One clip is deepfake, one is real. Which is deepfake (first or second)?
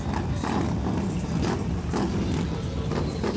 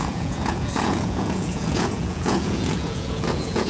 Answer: second